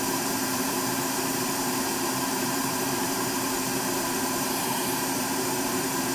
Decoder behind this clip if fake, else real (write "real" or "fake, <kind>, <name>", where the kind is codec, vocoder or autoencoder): fake, vocoder, BigVGAN v2